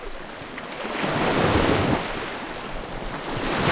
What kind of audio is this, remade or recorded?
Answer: recorded